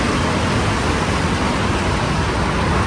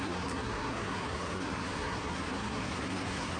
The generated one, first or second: second